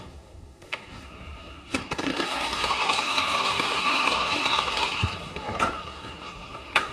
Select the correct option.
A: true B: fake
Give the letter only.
B